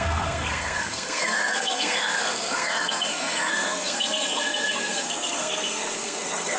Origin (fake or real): fake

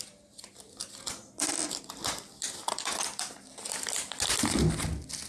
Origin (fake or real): real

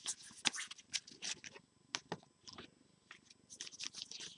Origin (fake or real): real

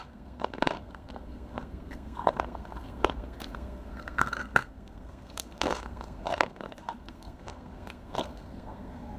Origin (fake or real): fake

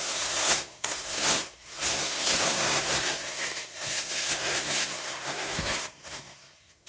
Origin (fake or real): fake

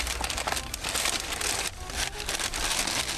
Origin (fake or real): real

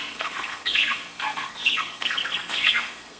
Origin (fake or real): fake